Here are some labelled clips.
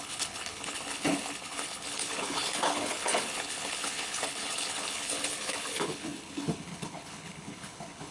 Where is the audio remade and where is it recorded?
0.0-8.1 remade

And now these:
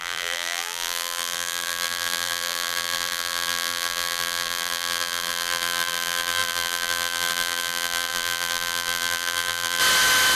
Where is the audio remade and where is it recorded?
0.0-9.8 remade; 9.8-10.4 recorded

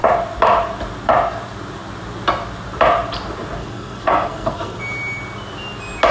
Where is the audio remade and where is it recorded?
0.0-3.6 recorded; 3.6-4.8 remade; 4.8-6.1 recorded

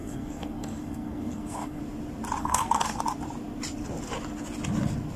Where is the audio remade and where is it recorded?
0.0-1.8 remade; 1.8-2.4 recorded; 2.4-3.0 remade; 3.0-5.2 recorded

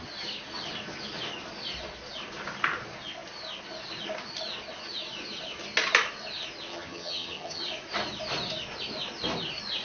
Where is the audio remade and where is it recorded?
0.0-6.7 recorded; 6.7-7.6 remade; 7.6-9.8 recorded